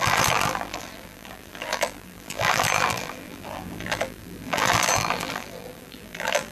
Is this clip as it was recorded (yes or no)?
no